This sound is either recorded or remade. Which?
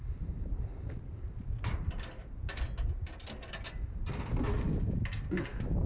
recorded